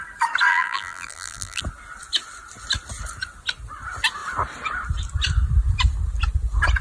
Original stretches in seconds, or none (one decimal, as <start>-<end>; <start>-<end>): 0.0-0.5; 1.6-6.8